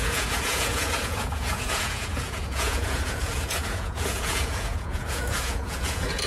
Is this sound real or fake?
fake